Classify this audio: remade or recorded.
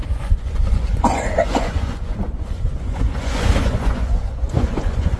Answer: remade